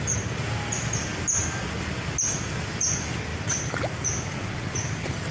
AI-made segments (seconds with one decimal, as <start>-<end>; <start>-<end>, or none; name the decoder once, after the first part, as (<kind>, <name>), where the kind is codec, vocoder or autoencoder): none